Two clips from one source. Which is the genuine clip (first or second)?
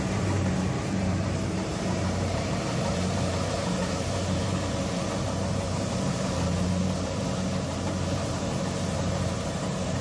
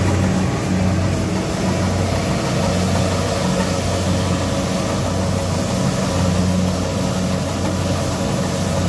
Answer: second